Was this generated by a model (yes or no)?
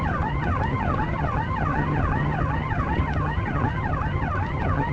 yes